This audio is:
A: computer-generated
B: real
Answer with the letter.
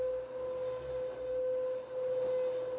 B